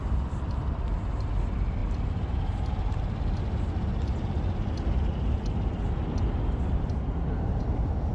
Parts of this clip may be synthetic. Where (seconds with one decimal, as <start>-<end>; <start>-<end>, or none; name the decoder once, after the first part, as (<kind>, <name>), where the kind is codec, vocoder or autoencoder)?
none